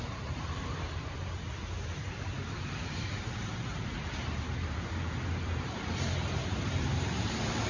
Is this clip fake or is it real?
fake